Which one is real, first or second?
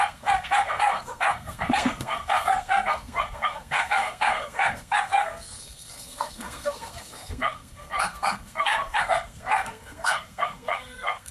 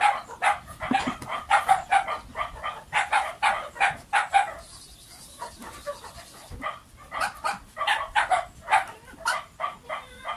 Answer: second